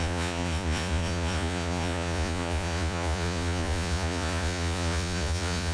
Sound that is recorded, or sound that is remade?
remade